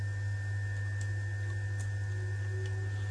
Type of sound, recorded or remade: recorded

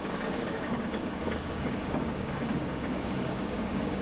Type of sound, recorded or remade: remade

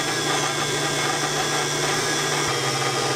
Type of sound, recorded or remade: recorded